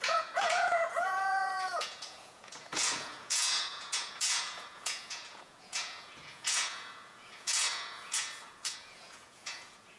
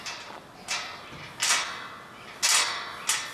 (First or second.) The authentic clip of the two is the second